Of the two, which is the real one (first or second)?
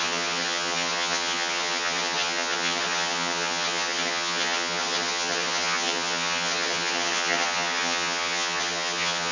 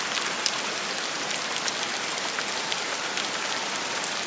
second